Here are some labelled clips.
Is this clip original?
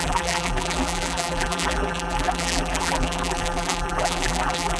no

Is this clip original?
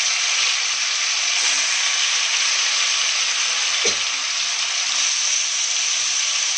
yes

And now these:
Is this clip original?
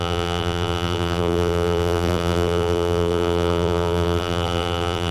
no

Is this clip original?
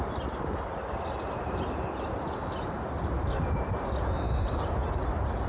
yes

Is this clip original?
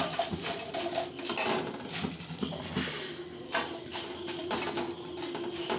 yes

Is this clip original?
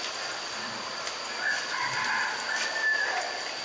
yes